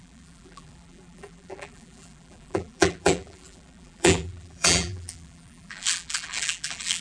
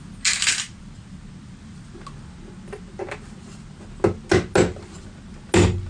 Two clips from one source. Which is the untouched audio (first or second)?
second